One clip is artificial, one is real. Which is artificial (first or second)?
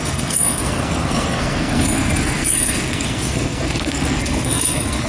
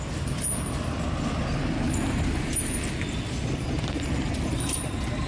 first